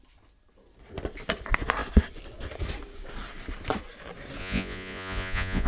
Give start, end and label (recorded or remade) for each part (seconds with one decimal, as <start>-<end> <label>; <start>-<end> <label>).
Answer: 0.0-4.4 recorded; 4.4-5.7 remade

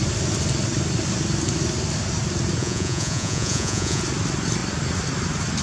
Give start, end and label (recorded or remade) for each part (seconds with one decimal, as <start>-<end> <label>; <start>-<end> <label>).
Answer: 0.0-2.6 recorded; 2.6-4.0 remade; 4.0-5.6 recorded

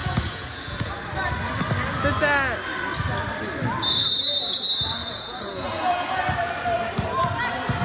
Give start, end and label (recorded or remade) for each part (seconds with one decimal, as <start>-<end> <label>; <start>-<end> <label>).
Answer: 0.0-0.9 remade; 0.9-5.0 recorded; 5.0-6.2 remade; 6.2-7.8 recorded

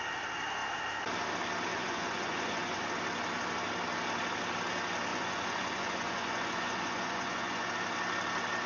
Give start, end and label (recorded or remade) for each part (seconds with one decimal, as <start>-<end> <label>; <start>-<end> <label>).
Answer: 0.0-1.7 recorded; 1.7-2.8 remade; 2.8-5.1 recorded; 5.1-7.7 remade; 7.7-8.7 recorded